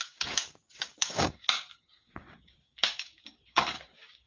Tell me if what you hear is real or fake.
fake